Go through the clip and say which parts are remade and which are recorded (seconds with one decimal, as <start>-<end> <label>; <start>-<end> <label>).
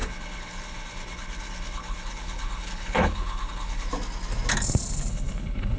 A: 0.0-3.9 remade; 3.9-5.1 recorded; 5.1-5.8 remade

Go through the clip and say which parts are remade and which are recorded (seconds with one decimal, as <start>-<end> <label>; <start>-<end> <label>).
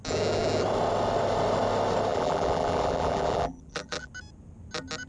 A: 0.0-2.1 recorded; 2.1-4.1 remade; 4.1-5.1 recorded